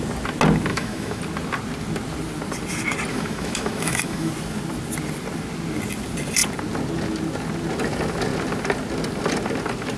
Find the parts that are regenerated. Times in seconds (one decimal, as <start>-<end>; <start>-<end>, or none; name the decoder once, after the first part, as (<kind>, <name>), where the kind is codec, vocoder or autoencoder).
0.7-1.2 (autoencoder, DAC-VAE); 3.1-4.3